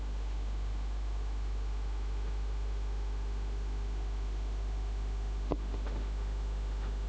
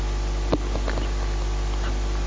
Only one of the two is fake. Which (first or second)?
first